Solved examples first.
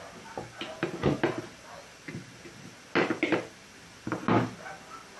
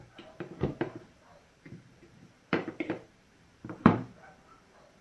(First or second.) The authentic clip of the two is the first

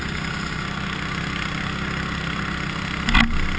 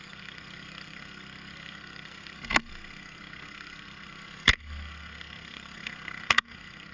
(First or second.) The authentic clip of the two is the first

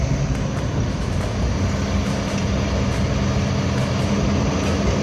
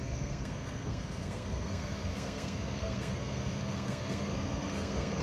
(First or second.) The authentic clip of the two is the first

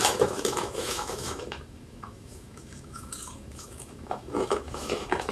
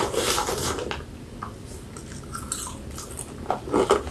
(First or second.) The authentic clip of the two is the second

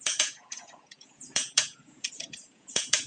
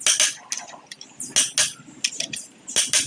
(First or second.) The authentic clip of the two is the second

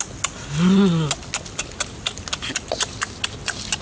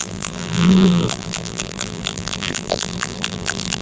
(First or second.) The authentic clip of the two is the first